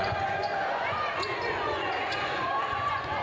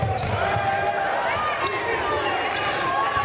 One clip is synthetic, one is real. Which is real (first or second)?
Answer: second